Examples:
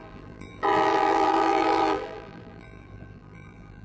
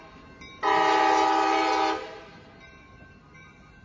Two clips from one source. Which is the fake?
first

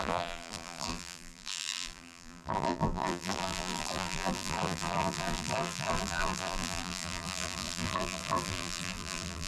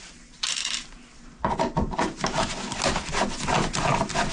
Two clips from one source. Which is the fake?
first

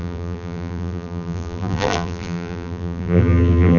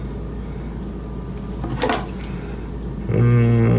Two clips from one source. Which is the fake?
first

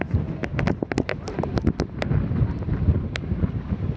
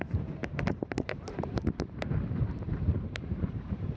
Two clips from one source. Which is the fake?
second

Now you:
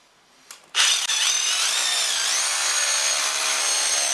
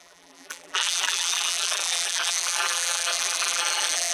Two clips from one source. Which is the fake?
second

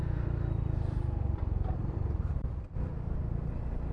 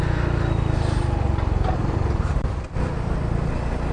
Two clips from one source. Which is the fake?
first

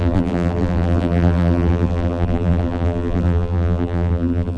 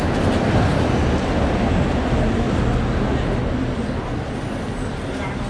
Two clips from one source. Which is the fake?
first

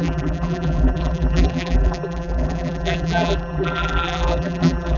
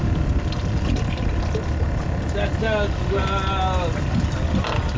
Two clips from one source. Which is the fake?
first